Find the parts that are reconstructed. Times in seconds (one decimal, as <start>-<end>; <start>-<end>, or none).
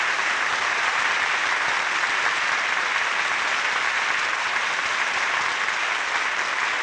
none